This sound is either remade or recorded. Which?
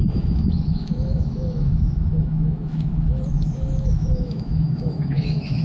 remade